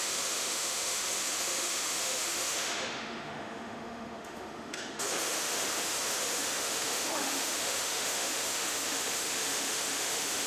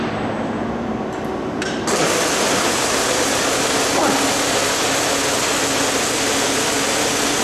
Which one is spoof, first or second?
first